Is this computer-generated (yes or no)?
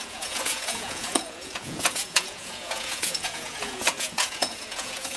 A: yes